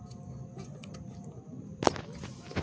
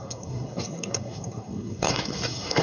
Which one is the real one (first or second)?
first